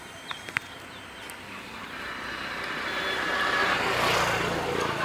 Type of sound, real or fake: real